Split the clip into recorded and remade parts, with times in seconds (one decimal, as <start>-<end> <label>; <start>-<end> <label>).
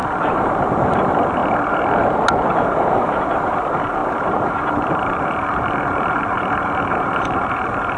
0.0-1.4 remade; 1.4-2.5 recorded; 2.5-8.0 remade